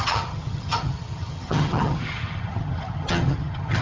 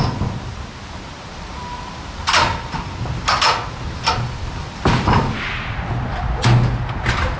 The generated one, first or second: first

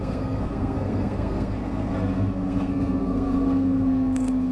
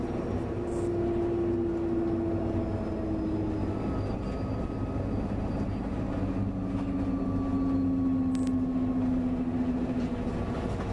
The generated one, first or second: first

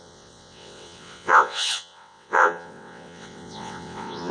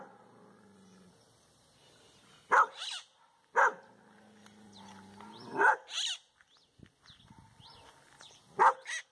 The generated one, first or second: first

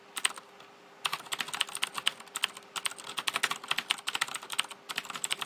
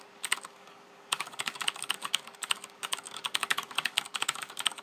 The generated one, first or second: second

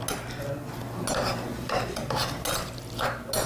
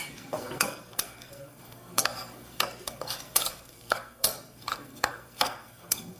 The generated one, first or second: second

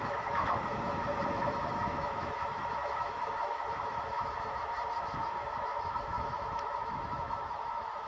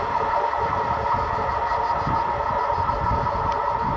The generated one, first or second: first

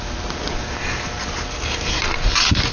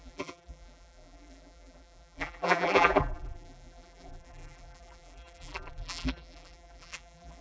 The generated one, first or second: second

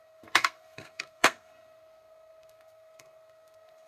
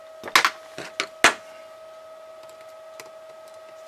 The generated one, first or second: first